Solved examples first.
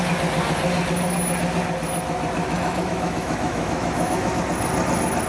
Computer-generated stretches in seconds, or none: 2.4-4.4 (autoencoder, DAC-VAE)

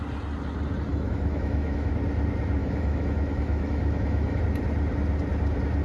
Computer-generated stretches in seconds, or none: 0.9-1.9 (autoencoder, DAC-VAE); 2.6-4.4